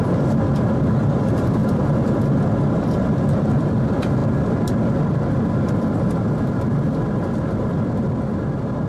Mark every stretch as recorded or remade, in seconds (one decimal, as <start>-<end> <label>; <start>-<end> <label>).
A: 0.0-8.9 remade